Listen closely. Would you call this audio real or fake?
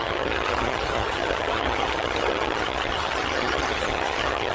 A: fake